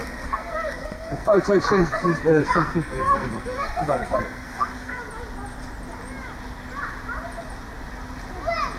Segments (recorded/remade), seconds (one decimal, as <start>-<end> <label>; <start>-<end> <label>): 0.0-5.0 remade; 5.0-8.8 recorded